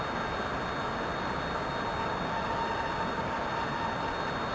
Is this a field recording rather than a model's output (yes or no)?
yes